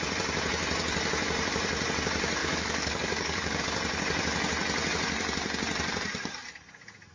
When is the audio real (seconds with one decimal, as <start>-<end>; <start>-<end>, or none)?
0.0-2.4; 3.6-7.1